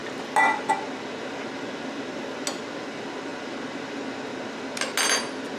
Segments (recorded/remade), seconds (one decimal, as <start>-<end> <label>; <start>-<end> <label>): 0.0-5.6 recorded